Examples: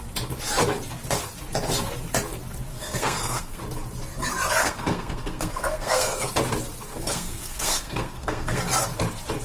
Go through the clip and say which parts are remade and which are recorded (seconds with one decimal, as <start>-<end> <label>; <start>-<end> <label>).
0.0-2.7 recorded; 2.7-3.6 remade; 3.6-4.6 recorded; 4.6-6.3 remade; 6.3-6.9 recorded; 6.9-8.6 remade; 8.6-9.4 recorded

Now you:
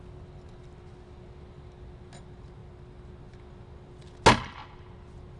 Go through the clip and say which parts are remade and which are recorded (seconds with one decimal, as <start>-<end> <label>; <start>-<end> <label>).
0.0-5.4 recorded

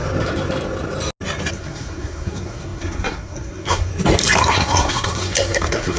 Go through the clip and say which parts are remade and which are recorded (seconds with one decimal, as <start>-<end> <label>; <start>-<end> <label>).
0.0-1.5 recorded; 1.5-3.9 remade; 3.9-4.4 recorded; 4.4-6.0 remade